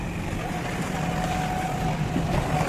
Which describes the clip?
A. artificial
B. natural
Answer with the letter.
B